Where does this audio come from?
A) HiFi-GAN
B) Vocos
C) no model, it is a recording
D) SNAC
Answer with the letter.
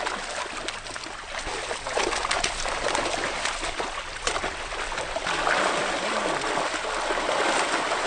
C